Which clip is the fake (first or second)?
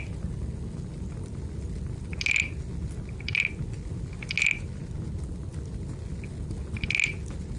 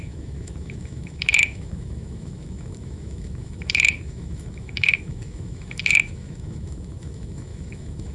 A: second